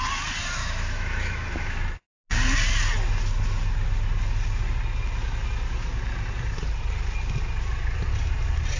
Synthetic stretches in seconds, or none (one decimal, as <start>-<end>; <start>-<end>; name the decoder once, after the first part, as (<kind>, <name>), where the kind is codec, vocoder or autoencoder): 0.6-1.8 (autoencoder, DAC-VAE)